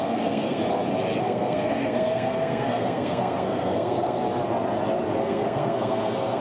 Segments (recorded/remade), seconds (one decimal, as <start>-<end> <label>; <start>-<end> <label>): 0.0-0.6 remade; 0.6-1.2 recorded; 1.2-4.2 remade; 4.2-5.2 recorded; 5.2-6.4 remade